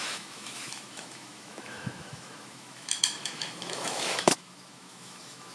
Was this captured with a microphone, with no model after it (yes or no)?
no